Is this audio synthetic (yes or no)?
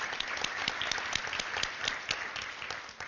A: no